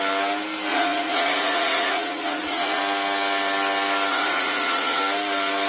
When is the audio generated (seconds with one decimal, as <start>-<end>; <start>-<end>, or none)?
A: 0.7-2.8; 4.1-5.0